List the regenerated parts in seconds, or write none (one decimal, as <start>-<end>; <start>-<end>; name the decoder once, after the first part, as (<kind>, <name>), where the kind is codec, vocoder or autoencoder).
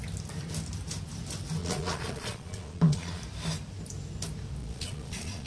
1.6-3.2 (vocoder, Vocos); 4.6-5.5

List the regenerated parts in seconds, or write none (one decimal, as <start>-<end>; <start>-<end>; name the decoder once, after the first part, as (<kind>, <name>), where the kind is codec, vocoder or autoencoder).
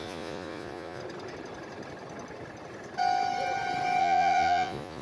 0.0-1.0 (vocoder, Vocos); 4.0-5.0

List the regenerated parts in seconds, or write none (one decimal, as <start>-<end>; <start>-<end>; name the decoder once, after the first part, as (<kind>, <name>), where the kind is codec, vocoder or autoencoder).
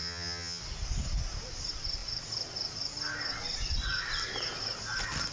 0.0-0.6 (vocoder, HiFi-GAN)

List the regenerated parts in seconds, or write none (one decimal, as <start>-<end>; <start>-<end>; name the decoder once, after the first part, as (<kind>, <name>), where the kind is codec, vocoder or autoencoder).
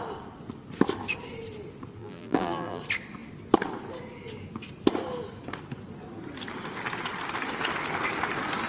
2.0-2.8 (vocoder, BigVGAN v2)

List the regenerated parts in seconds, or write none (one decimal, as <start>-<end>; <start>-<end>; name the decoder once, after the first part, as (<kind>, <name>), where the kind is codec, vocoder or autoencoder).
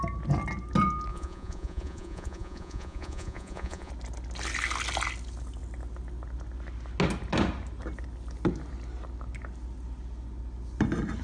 1.1-3.9 (vocoder, Vocos)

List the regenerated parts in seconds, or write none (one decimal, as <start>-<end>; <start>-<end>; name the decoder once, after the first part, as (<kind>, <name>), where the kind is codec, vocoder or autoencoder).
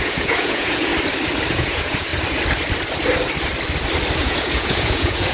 0.0-0.9 (vocoder, Vocos); 1.5-2.1; 4.2-5.3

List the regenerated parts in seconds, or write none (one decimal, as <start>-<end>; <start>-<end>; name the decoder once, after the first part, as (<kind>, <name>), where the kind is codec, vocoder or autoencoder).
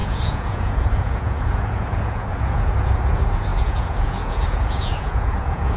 0.0-5.8 (vocoder, Vocos)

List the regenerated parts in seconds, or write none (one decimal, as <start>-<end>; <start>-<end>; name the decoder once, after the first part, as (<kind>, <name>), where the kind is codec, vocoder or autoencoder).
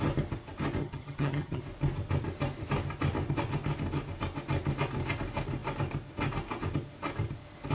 0.8-1.6 (vocoder, HiFi-GAN)